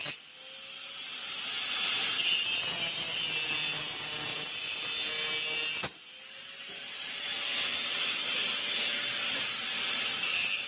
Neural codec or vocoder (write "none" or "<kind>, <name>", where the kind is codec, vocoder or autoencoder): none